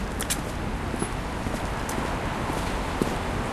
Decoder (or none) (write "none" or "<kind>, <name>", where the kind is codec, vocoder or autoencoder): none